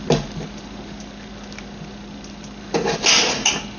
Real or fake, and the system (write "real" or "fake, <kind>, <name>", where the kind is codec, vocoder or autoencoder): real